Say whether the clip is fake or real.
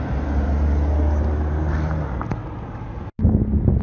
real